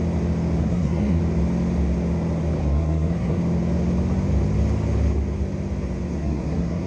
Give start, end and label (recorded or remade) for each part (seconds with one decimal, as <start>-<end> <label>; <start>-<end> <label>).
0.0-0.6 recorded; 0.6-1.2 remade; 1.2-2.6 recorded; 2.6-3.4 remade; 3.4-6.1 recorded; 6.1-6.9 remade